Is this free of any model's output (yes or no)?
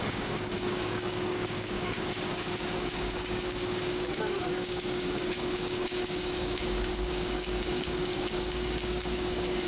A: no